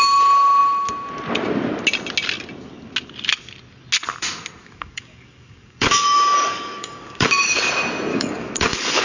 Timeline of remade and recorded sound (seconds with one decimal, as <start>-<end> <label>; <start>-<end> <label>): 0.0-4.6 recorded; 4.6-7.7 remade; 7.7-8.1 recorded; 8.1-9.0 remade